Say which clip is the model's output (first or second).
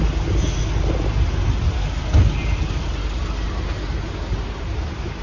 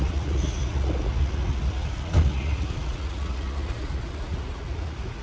second